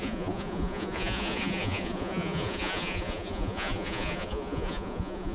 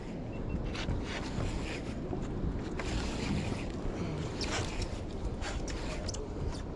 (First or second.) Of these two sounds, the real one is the second